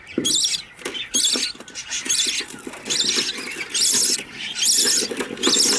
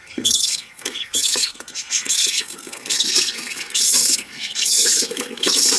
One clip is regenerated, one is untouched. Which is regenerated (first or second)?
second